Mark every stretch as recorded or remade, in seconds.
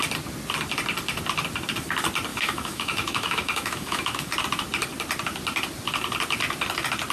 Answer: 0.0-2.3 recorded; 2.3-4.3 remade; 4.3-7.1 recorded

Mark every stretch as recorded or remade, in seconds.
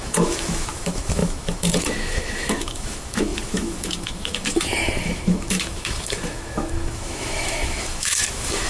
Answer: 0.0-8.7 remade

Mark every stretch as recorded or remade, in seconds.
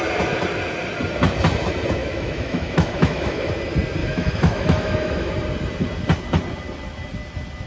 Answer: 0.0-2.0 recorded; 2.0-3.5 remade; 3.5-4.0 recorded; 4.0-5.3 remade; 5.3-7.7 recorded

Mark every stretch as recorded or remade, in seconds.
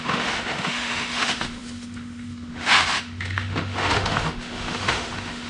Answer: 0.0-5.5 remade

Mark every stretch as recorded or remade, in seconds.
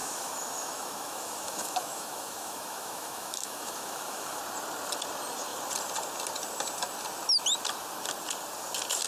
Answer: 0.0-4.4 remade; 4.4-9.1 recorded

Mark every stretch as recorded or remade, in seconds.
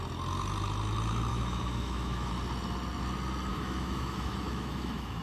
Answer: 0.0-1.3 recorded; 1.3-2.3 remade; 2.3-3.5 recorded; 3.5-5.2 remade